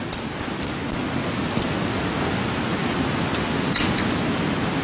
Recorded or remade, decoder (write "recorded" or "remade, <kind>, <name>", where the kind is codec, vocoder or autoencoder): recorded